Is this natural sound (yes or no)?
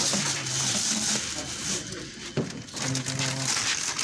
yes